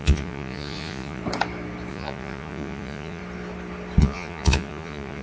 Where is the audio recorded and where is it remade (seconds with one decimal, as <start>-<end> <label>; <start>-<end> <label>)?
0.0-1.2 remade; 1.2-1.9 recorded; 1.9-3.2 remade; 3.2-4.0 recorded; 4.0-5.2 remade